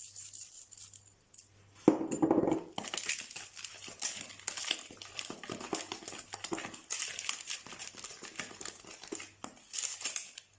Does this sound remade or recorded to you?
recorded